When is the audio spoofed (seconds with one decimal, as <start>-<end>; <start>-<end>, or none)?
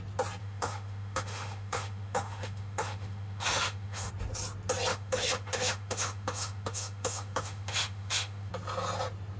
0.4-4.1; 4.9-8.5